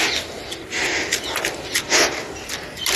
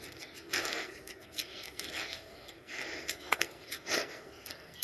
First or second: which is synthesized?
second